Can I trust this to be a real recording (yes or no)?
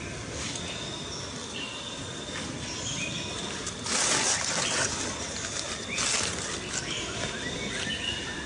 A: yes